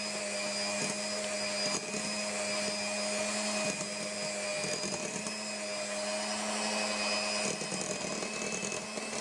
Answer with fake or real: real